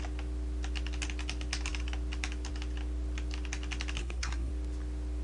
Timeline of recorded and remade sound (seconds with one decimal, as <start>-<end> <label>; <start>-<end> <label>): 0.0-4.0 recorded; 4.0-4.5 remade; 4.5-5.2 recorded